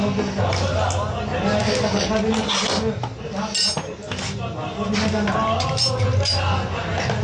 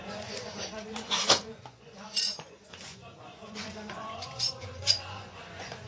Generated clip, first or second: second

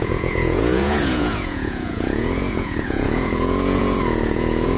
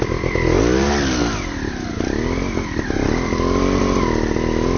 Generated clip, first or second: first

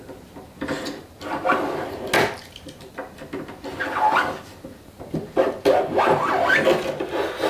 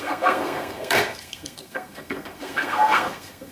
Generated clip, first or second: second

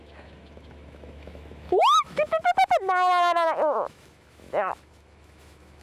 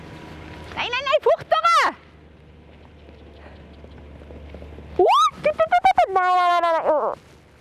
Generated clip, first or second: first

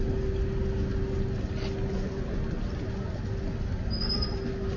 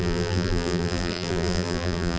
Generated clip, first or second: second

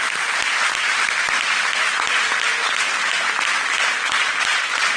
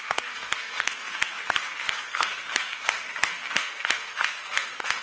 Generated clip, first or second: second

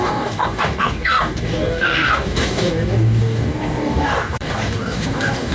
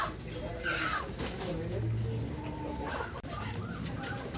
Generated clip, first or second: first